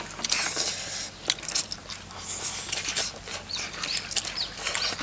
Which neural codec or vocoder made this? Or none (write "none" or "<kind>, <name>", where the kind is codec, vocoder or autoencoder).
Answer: none